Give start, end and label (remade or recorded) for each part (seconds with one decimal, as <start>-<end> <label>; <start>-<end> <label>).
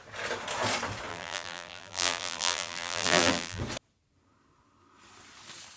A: 0.0-1.1 recorded; 1.1-3.6 remade; 3.6-5.8 recorded